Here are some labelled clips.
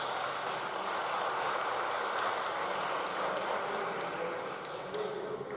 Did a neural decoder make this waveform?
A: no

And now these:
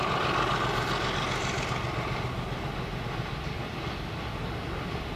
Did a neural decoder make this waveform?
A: no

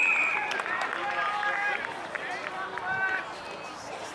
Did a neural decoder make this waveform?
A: no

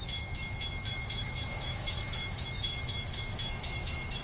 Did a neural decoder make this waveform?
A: yes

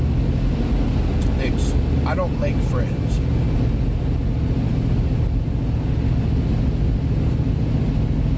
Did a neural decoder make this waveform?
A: no